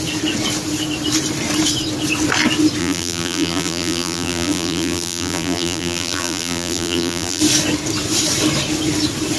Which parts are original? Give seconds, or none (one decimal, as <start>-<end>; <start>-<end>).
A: 0.0-2.8; 7.4-9.4